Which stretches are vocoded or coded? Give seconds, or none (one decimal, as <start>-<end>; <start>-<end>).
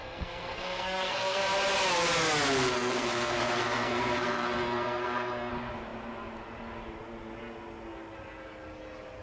0.0-1.4; 2.7-5.5